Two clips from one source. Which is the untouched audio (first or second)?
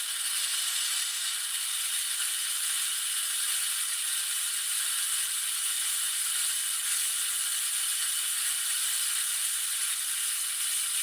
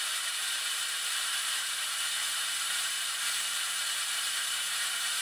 first